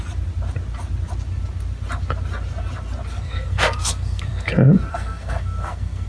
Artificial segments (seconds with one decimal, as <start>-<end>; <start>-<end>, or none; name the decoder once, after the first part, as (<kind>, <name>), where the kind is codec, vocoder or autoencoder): 3.1-4.5 (codec, SNAC); 4.9-6.1